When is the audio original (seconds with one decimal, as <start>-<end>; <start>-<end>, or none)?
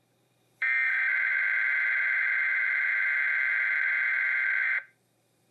none